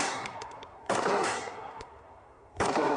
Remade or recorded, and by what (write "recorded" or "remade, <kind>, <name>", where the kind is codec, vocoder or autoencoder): remade, codec, SNAC